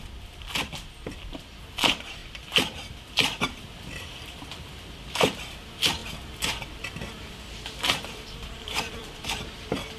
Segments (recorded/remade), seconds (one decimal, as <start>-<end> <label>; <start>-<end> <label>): 0.0-6.0 remade; 6.0-7.8 recorded; 7.8-10.0 remade